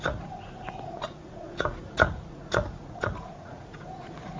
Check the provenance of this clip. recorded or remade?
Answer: remade